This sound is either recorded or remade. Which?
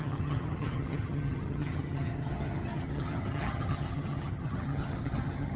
remade